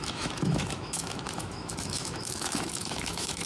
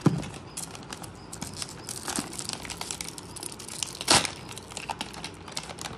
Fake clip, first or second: first